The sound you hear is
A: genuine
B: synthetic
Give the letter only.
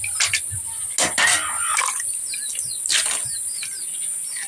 A